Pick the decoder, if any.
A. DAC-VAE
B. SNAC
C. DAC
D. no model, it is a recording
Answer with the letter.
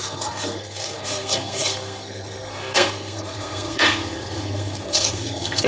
B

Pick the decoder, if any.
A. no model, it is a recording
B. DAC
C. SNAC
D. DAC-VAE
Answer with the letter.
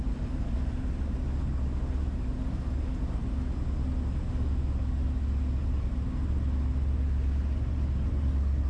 A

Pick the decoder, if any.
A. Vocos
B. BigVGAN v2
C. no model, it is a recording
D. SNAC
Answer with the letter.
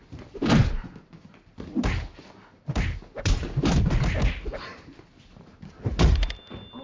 C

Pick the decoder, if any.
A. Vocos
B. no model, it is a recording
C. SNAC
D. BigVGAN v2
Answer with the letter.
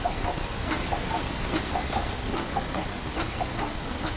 C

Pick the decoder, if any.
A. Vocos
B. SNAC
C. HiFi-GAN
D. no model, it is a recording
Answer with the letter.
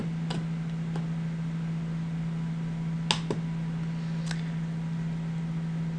D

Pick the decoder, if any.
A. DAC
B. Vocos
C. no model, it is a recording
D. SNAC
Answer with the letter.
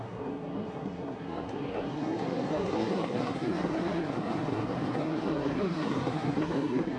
D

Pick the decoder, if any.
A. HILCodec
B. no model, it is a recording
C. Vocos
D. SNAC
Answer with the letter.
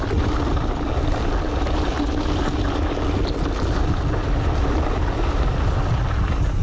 B